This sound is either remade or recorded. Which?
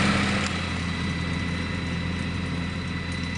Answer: recorded